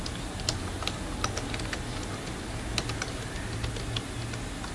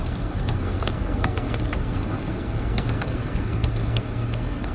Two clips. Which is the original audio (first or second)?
first